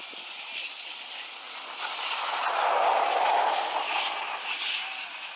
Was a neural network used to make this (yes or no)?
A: yes